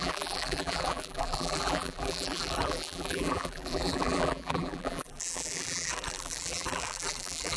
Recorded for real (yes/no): no